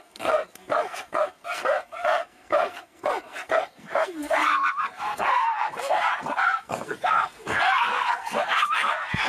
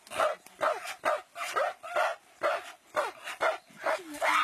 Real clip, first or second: second